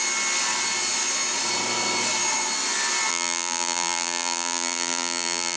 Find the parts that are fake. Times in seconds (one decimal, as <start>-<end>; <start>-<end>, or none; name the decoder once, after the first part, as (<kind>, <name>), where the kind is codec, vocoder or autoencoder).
3.1-5.6 (vocoder, BigVGAN v2)